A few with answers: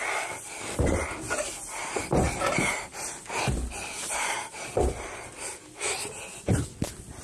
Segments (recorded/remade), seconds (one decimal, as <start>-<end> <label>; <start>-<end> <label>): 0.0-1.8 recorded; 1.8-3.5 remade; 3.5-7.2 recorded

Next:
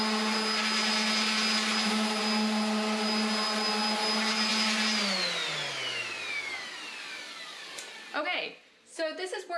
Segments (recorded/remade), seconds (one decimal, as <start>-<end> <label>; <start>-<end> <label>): 0.0-9.6 recorded

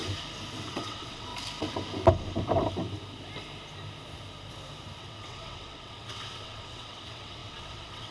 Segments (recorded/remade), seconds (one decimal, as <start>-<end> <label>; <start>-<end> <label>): 0.0-0.6 recorded; 0.6-1.3 remade; 1.3-5.0 recorded; 5.0-8.1 remade

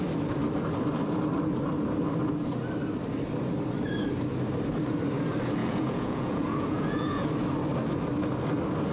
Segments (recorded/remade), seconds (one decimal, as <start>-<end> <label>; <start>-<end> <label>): 0.0-5.6 recorded; 5.6-7.3 remade; 7.3-8.9 recorded

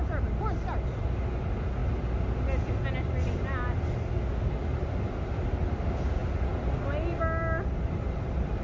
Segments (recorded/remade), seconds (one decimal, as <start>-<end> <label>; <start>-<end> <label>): 0.0-8.6 recorded

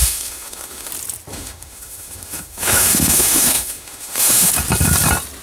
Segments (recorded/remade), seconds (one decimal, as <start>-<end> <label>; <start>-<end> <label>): 0.0-0.9 remade; 0.9-1.3 recorded; 1.3-4.5 remade; 4.5-5.4 recorded